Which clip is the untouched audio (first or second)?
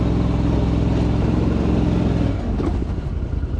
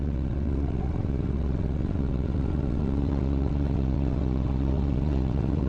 first